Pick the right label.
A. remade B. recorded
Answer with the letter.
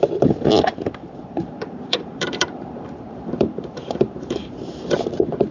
A